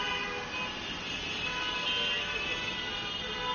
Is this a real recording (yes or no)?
yes